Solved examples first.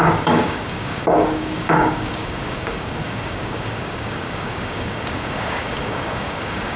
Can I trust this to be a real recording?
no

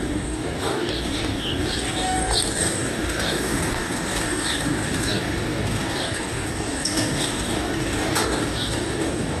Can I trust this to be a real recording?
no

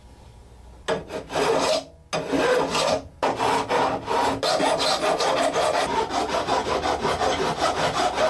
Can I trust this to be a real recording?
yes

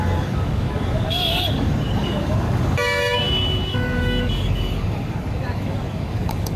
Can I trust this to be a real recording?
no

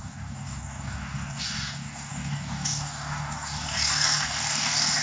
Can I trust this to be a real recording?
no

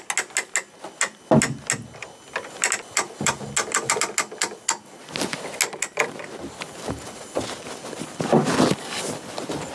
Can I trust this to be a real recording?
yes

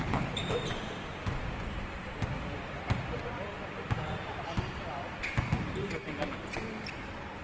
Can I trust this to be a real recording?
yes